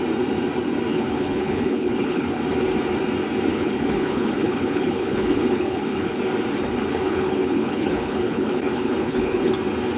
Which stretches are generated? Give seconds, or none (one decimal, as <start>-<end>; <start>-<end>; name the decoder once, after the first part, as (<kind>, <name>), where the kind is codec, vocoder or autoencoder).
0.9-2.4 (codec, HILCodec); 3.5-6.2; 6.9-9.5